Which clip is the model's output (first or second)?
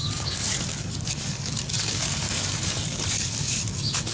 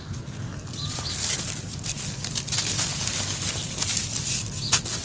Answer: first